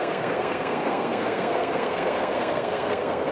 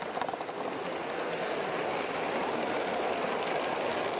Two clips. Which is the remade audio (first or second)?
first